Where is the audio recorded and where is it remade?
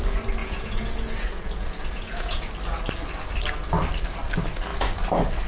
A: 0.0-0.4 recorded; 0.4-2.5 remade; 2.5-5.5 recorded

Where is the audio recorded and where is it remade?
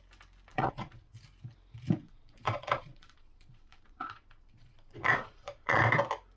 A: 0.0-0.5 recorded; 0.5-1.1 remade; 1.1-2.0 recorded; 2.0-5.8 remade; 5.8-6.4 recorded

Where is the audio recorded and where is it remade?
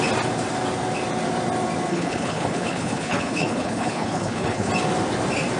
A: 0.0-1.9 recorded; 1.9-4.7 remade; 4.7-5.6 recorded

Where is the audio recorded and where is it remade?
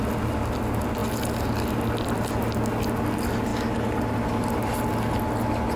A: 0.0-5.8 recorded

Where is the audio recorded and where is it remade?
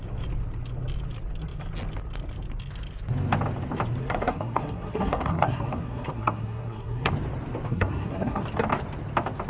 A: 0.0-4.0 recorded; 4.0-7.1 remade; 7.1-7.7 recorded; 7.7-8.4 remade; 8.4-9.5 recorded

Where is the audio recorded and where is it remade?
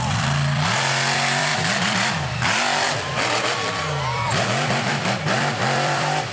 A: 0.0-6.3 remade